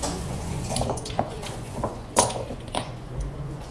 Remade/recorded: remade